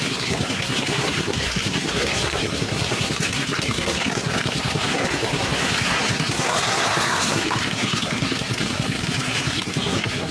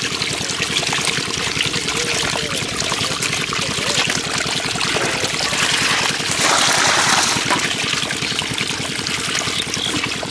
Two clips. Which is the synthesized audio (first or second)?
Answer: first